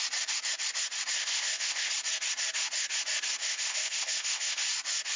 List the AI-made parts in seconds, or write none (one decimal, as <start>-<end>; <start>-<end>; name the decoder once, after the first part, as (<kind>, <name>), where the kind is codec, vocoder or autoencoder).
1.2-1.9 (codec, ZipCodec); 3.4-4.6